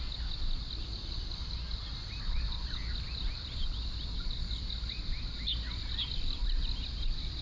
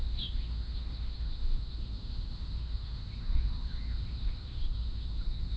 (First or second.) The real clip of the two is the first